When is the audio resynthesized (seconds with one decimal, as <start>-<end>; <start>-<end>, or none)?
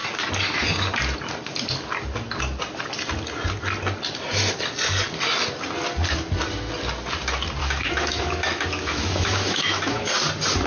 7.6-10.1